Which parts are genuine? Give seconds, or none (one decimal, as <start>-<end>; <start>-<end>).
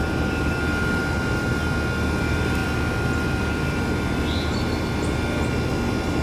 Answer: 0.0-6.2